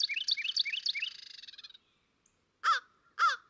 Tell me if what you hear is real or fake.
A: real